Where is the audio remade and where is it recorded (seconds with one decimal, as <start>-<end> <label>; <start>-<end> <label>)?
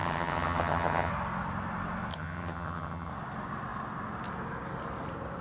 0.0-1.1 remade; 1.1-2.1 recorded; 2.1-3.1 remade; 3.1-5.4 recorded